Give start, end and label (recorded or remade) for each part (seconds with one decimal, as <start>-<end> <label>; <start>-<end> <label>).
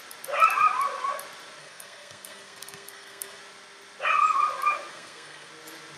0.0-1.6 recorded; 1.6-3.4 remade; 3.4-4.9 recorded; 4.9-5.5 remade; 5.5-6.0 recorded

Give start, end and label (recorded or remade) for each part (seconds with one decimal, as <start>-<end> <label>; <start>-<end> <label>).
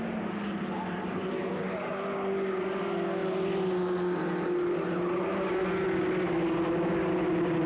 0.0-7.7 recorded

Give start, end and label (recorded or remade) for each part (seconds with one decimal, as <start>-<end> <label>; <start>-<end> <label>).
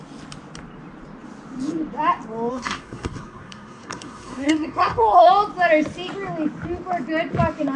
0.0-2.5 recorded; 2.5-5.3 remade; 5.3-7.8 recorded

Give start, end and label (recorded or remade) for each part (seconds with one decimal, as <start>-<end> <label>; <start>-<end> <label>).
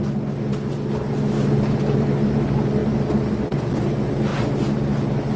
0.0-5.4 recorded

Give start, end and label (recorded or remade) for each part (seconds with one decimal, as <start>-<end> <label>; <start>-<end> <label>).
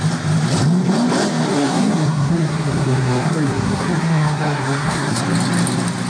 0.0-1.5 recorded; 1.5-5.2 remade; 5.2-6.1 recorded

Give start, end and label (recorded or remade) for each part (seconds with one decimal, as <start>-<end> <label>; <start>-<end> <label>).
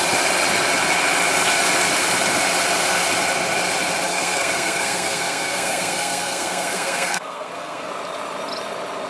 0.0-4.1 recorded; 4.1-7.9 remade; 7.9-9.1 recorded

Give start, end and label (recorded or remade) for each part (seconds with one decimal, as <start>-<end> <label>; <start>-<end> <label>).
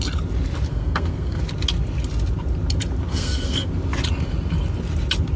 0.0-0.7 recorded; 0.7-1.4 remade; 1.4-3.1 recorded; 3.1-3.7 remade; 3.7-5.4 recorded